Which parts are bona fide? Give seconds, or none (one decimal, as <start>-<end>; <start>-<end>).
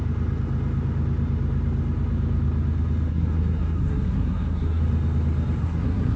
0.0-3.1; 4.8-5.6